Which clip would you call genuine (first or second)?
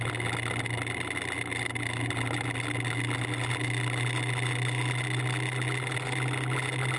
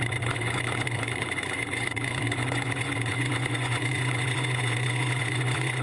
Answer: first